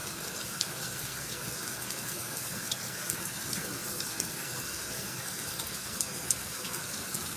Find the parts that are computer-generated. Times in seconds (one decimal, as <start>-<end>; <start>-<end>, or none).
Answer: 0.0-7.4